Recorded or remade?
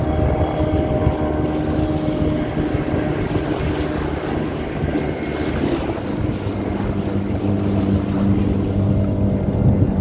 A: recorded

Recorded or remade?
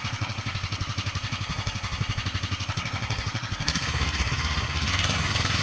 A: remade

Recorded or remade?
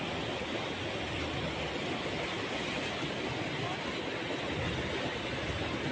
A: recorded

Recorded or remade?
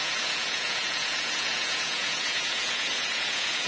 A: remade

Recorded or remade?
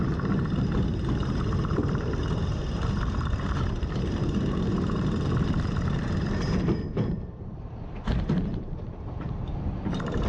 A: remade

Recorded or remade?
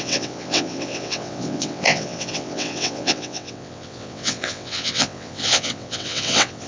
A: remade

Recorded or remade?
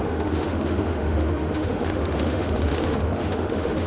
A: remade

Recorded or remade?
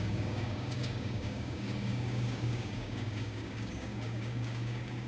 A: remade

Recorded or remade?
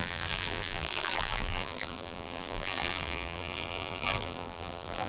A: remade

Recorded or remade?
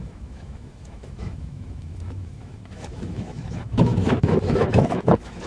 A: remade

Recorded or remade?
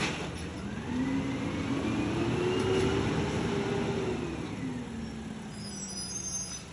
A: recorded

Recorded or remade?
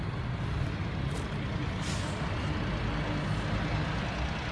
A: recorded